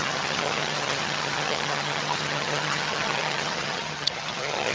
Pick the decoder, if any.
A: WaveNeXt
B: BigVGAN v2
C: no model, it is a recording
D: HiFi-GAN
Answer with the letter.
D